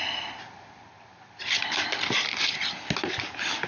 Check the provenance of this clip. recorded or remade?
recorded